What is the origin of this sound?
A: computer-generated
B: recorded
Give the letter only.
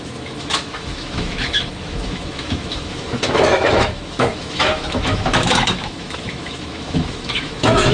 A